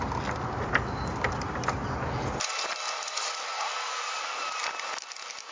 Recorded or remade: recorded